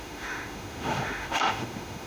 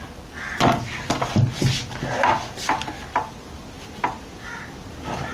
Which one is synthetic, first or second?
first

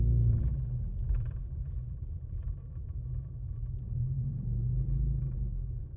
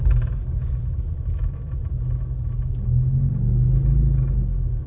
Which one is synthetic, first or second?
first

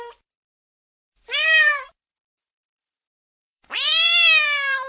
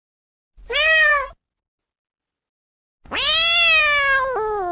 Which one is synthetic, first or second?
first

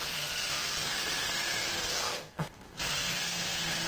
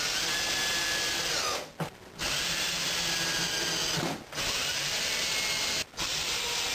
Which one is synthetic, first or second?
first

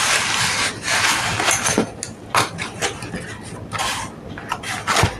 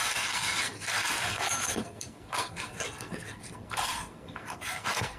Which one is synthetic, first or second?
second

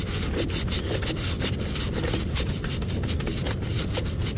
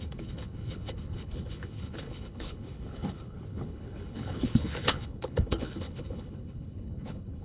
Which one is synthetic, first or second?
second